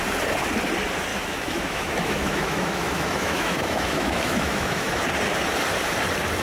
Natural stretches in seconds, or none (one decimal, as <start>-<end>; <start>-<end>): 0.0-1.1; 4.9-6.4